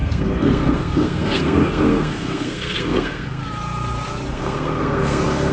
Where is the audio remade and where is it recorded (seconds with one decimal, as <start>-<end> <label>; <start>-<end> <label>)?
0.0-3.4 remade; 3.4-4.3 recorded; 4.3-5.5 remade